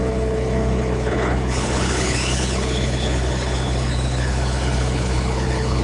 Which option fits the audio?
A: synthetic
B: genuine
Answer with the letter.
A